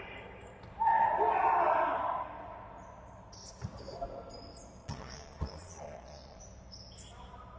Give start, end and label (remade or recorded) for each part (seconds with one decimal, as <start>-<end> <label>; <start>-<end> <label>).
0.0-4.8 recorded; 4.8-6.4 remade; 6.4-7.6 recorded